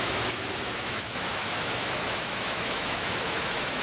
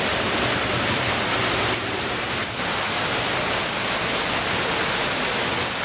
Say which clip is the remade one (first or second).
first